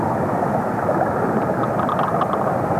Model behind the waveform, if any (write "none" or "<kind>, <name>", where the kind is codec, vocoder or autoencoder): none